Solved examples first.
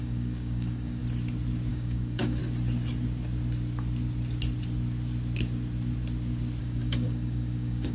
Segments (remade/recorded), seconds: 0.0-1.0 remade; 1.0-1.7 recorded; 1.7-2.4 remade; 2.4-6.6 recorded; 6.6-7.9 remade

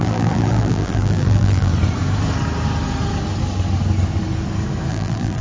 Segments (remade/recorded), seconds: 0.0-1.7 remade; 1.7-4.9 recorded; 4.9-5.4 remade

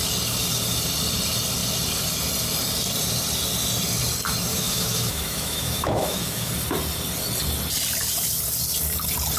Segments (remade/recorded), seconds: 0.0-4.5 recorded; 4.5-6.5 remade; 6.5-9.4 recorded